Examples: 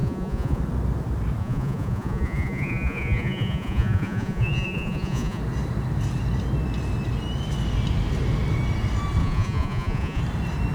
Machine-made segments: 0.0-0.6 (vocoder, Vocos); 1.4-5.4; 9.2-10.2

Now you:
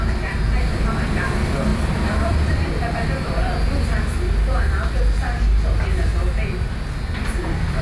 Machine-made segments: 0.0-6.1 (vocoder, BigVGAN v2); 7.2-7.8

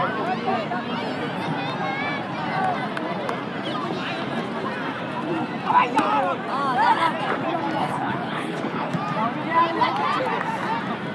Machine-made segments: 7.8-8.9 (codec, HILCodec)